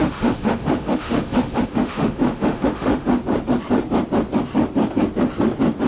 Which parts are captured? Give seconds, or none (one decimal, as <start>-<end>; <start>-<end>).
3.2-5.9